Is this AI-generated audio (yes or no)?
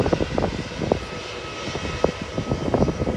no